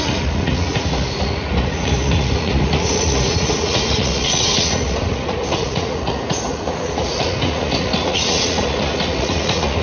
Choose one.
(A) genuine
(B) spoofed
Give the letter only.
B